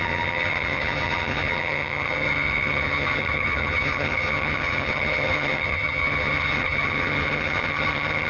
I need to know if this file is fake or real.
fake